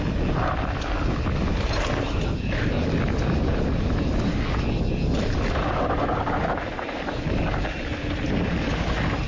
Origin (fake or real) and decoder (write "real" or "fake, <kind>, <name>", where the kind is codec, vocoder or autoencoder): real